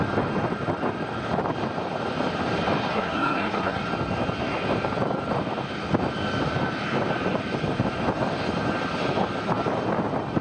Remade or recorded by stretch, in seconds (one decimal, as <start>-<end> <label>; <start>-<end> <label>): 0.0-2.9 recorded; 2.9-3.8 remade; 3.8-10.4 recorded

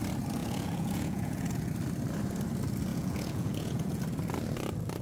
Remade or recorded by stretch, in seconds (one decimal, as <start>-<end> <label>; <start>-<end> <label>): 0.0-0.4 recorded; 0.4-1.7 remade; 1.7-2.9 recorded; 2.9-4.0 remade; 4.0-5.0 recorded

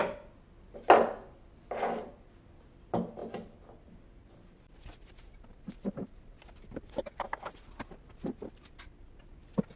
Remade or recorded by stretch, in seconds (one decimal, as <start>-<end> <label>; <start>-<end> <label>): 0.0-9.8 recorded

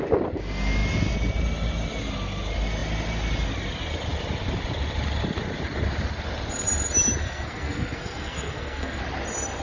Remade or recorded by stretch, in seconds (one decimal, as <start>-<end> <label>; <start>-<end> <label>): 0.0-7.2 recorded; 7.2-9.0 remade; 9.0-9.6 recorded